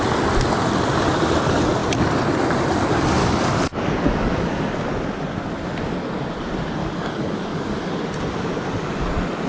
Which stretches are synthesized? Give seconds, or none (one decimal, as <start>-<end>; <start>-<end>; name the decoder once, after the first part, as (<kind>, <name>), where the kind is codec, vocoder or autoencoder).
3.2-4.9 (codec, DAC); 6.8-7.9